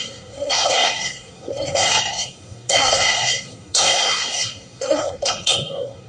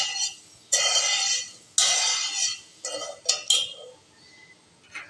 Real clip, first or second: second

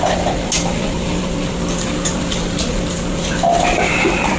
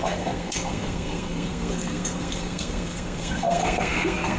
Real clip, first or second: first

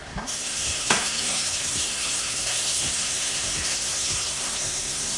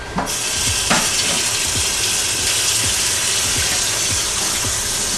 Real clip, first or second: second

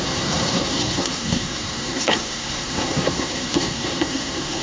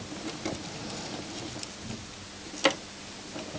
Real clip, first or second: second